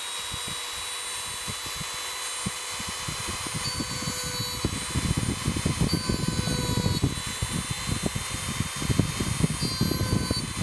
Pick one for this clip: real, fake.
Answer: real